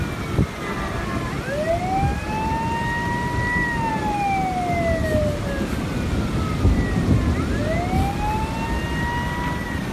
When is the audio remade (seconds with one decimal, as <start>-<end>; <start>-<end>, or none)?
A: none